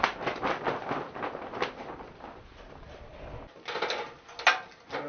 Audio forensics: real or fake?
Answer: real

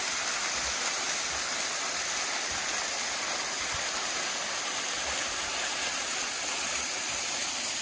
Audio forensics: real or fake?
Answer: real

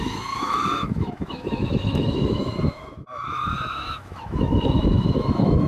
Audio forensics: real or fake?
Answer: fake